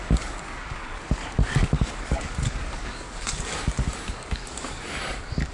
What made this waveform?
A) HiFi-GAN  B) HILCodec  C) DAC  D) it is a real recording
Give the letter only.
C